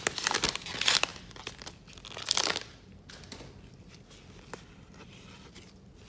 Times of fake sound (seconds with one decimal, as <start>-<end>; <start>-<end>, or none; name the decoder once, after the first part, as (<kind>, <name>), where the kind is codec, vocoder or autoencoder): none